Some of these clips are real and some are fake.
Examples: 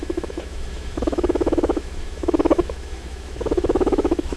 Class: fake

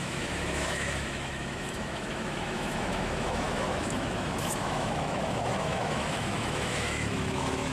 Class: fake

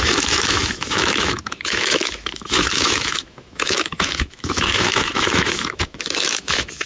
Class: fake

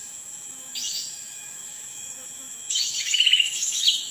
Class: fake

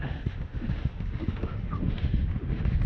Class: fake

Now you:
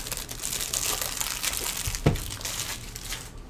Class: real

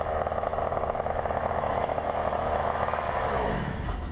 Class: fake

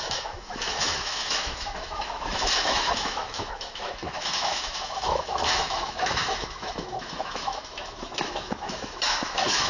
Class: fake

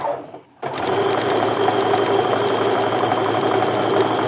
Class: real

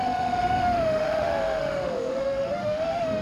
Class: fake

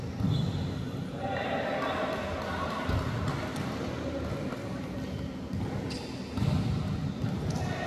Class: real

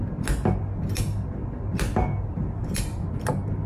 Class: real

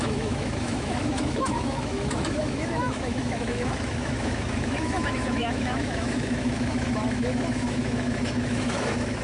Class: fake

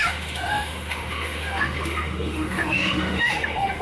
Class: fake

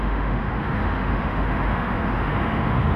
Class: fake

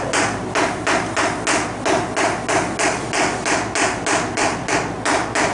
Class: real